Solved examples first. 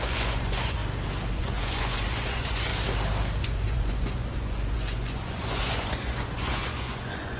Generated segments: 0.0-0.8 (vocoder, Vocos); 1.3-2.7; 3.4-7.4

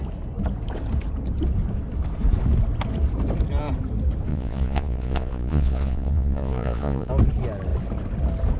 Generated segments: 4.3-7.1 (vocoder, Vocos)

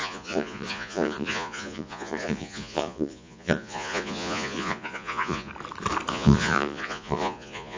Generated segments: 0.0-5.5 (vocoder, Vocos); 6.1-7.8